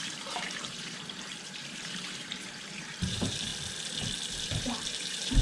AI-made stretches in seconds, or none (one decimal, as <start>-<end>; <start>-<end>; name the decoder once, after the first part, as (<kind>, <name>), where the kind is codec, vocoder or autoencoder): 0.0-3.5 (vocoder, BigVGAN v2); 4.3-5.4